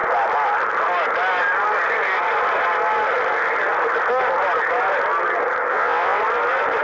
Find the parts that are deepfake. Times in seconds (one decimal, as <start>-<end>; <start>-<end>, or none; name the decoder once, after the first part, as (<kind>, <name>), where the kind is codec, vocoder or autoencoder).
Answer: 5.7-6.2 (vocoder, WaveNeXt)